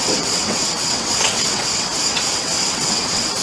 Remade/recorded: remade